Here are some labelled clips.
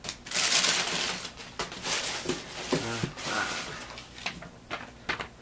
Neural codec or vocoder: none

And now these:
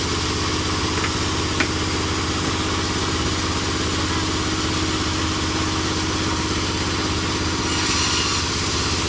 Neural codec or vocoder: none